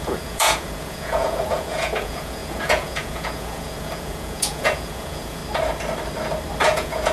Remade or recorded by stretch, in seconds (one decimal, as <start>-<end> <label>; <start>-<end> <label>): 0.0-5.4 remade; 5.4-6.6 recorded; 6.6-7.1 remade